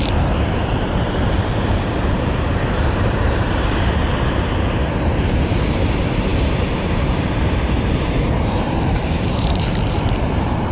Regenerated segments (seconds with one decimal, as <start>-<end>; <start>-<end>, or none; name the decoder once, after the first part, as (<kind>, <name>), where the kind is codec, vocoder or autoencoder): 0.0-10.7 (vocoder, BigVGAN v2)